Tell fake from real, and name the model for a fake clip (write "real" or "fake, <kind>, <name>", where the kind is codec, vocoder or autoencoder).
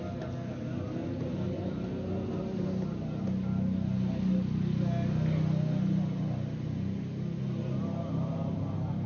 real